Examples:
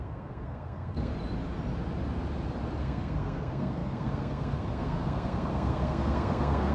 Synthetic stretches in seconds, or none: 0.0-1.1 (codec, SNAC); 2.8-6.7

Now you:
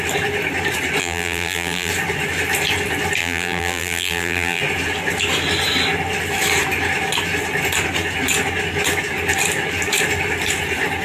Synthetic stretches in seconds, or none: 1.0-1.9 (vocoder, BigVGAN v2); 3.2-4.6